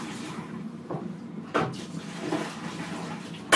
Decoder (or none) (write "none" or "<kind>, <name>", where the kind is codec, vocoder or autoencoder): none